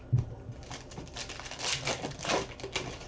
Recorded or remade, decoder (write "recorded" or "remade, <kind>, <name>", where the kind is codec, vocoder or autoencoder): recorded